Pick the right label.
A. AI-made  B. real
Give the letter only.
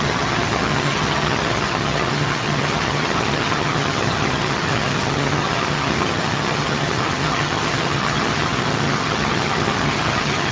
A